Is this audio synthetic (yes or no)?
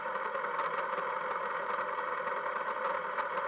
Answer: no